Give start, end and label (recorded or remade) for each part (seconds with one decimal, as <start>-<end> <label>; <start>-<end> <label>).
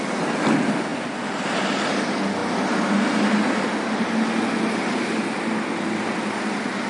0.0-6.9 recorded